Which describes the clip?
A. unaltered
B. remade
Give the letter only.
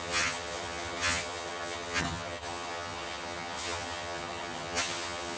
B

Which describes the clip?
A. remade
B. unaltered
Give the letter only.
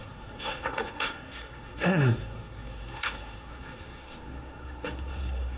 A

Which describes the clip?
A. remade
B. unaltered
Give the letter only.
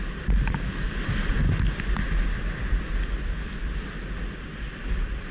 B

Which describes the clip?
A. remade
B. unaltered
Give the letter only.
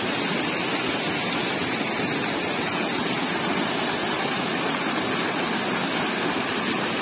B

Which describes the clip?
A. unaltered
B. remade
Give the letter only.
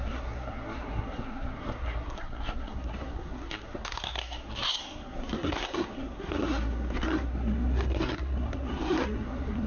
B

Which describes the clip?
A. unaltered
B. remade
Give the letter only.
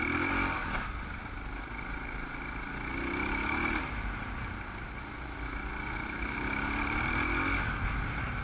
A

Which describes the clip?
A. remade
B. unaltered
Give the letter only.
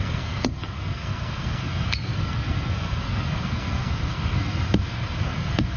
A